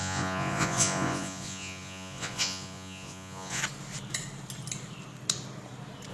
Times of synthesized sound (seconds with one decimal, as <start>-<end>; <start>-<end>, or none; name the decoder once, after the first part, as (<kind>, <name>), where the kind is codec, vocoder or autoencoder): 0.0-3.6 (vocoder, Vocos)